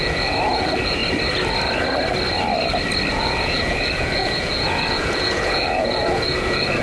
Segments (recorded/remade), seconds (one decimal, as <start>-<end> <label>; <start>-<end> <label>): 0.0-1.0 remade; 1.0-3.1 recorded; 3.1-6.8 remade